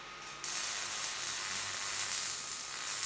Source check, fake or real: real